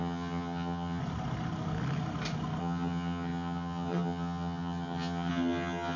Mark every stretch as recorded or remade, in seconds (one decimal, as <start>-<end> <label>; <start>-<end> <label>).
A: 0.0-1.0 remade; 1.0-2.6 recorded; 2.6-6.0 remade